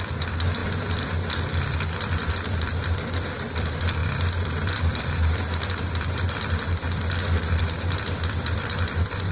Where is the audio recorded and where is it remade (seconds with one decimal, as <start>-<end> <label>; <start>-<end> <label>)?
0.0-9.3 remade